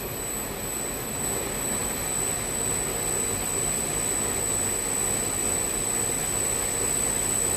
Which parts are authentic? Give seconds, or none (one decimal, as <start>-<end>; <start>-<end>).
0.0-7.6